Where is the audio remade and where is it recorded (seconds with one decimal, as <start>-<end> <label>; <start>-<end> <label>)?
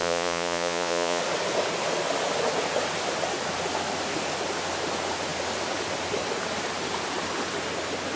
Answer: 0.0-1.2 remade; 1.2-8.2 recorded